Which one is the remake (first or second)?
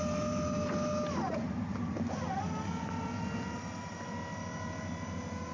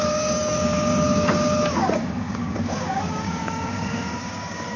second